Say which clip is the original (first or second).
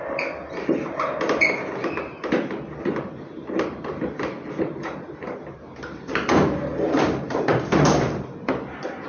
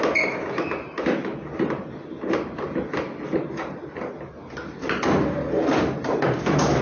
second